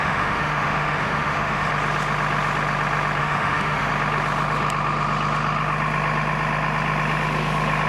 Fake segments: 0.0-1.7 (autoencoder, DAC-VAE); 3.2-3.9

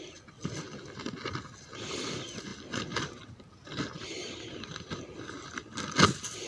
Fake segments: none

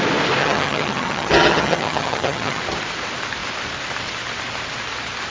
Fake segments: 0.4-2.6 (vocoder, HiFi-GAN)